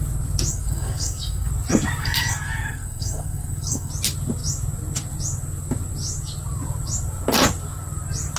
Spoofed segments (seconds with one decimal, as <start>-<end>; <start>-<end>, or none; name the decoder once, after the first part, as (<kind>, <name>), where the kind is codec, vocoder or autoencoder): 0.5-1.5 (codec, SNAC); 2.0-3.9